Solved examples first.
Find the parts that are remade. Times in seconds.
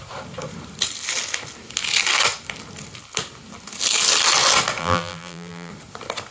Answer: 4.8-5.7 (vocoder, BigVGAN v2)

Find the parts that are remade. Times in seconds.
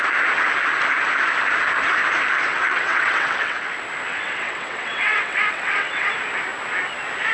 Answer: 2.5-3.6 (vocoder, WaveNeXt); 4.1-6.1